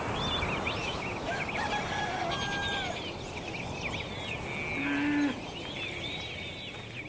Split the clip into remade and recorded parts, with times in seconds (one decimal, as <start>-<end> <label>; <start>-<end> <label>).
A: 0.0-0.8 recorded; 0.8-1.4 remade; 1.4-7.1 recorded

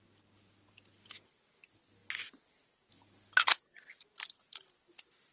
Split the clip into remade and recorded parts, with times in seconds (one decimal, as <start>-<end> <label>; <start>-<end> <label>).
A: 0.0-5.3 recorded